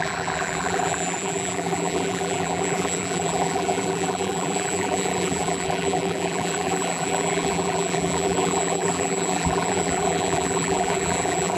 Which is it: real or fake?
fake